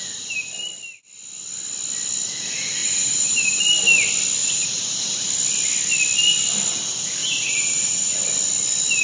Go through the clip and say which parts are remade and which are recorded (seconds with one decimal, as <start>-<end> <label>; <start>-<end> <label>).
0.0-2.8 recorded; 2.8-3.6 remade; 3.6-4.4 recorded; 4.4-5.0 remade; 5.0-7.2 recorded; 7.2-8.2 remade; 8.2-9.0 recorded